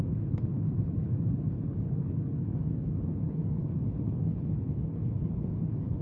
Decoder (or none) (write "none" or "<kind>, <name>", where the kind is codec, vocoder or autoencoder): codec, HILCodec